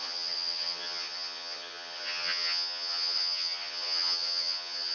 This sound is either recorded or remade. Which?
remade